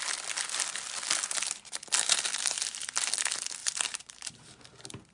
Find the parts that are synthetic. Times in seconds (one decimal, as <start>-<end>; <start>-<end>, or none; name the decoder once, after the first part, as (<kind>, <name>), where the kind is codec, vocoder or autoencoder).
3.6-4.3 (vocoder, BigVGAN v2)